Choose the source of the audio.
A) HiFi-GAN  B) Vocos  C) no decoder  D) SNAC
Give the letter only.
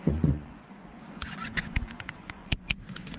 B